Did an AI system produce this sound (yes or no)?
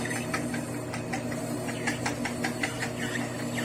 yes